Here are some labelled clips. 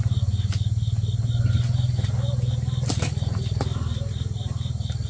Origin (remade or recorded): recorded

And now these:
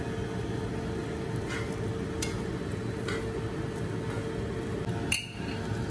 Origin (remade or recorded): recorded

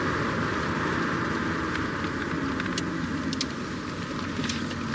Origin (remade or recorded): recorded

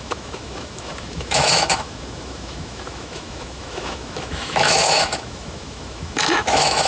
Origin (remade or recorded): remade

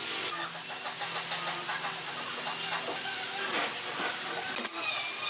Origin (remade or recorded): recorded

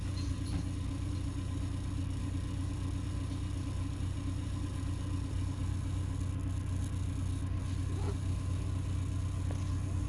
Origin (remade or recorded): recorded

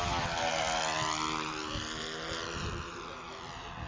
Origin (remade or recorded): recorded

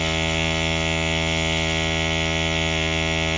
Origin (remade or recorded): recorded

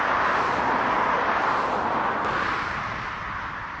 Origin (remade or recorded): recorded